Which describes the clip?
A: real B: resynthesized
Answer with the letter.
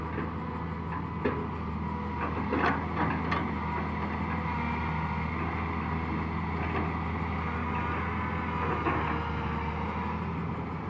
A